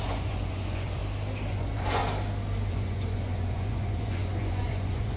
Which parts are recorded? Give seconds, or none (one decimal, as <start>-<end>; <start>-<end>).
1.0-1.5; 2.0-2.7